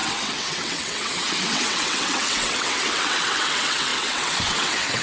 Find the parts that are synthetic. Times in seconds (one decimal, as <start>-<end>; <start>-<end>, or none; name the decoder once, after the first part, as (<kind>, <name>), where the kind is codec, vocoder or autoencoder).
0.0-5.0 (vocoder, WaveNeXt)